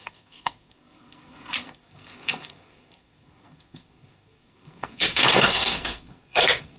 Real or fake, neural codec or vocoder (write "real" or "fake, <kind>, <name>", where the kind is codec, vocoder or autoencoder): fake, codec, SNAC